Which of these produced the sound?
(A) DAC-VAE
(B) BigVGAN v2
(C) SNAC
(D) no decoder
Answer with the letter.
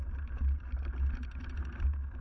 B